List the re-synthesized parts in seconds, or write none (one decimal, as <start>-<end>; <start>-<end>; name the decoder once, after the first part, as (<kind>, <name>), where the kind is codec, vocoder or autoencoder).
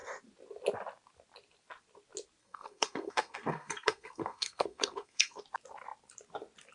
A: 2.4-5.4 (codec, SNAC)